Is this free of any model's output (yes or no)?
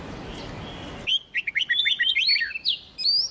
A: yes